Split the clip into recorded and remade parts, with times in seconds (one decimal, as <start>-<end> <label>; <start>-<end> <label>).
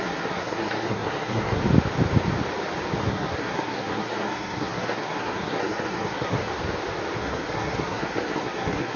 0.0-1.6 remade; 1.6-3.0 recorded; 3.0-6.5 remade; 6.5-7.2 recorded; 7.2-9.0 remade